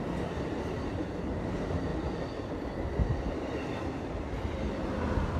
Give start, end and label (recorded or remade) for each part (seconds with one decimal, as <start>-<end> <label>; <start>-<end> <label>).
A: 0.0-5.4 recorded